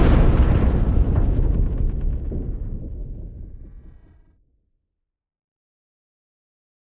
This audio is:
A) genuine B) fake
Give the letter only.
A